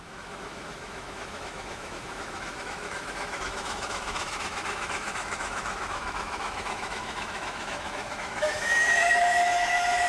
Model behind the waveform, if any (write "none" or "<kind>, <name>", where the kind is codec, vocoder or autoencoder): autoencoder, DAC-VAE